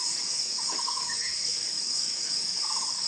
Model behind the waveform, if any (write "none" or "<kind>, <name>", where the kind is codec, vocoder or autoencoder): codec, DAC